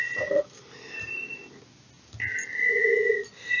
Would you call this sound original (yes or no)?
yes